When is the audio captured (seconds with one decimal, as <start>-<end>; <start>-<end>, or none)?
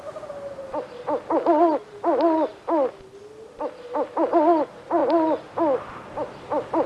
0.0-6.9